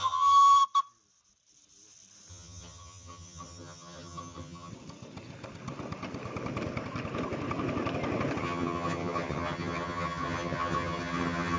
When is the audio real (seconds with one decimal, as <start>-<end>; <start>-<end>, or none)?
0.6-2.3; 4.7-8.4